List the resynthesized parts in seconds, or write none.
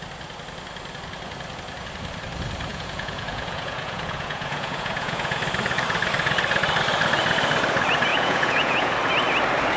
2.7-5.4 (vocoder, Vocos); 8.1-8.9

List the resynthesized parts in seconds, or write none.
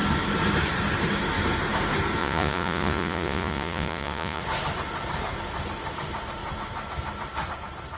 2.2-4.4 (vocoder, Vocos)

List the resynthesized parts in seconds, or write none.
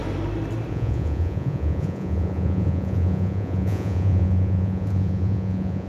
0.7-5.9 (vocoder, Vocos)